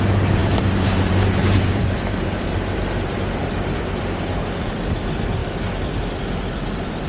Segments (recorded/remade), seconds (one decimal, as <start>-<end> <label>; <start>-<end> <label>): 0.0-0.4 recorded; 0.4-4.7 remade; 4.7-7.1 recorded